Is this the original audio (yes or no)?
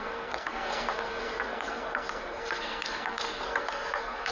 no